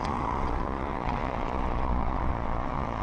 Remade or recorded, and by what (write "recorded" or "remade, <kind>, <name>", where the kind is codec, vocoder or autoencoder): remade, vocoder, Vocos